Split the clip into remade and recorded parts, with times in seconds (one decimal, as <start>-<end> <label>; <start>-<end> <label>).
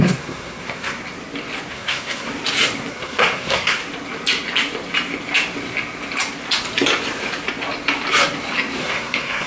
0.0-1.0 remade; 1.0-1.7 recorded; 1.7-2.3 remade; 2.3-2.9 recorded; 2.9-3.8 remade; 3.8-8.8 recorded; 8.8-9.5 remade